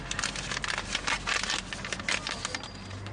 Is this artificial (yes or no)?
no